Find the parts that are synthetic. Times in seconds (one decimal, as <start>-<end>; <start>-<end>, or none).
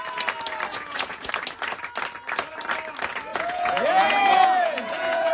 0.7-1.3; 3.3-5.3